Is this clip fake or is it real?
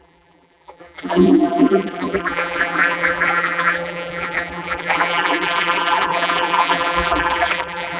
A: fake